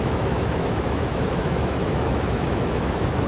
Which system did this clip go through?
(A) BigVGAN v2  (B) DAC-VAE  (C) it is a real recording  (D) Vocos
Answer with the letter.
B